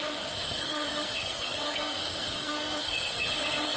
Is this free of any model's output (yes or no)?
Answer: no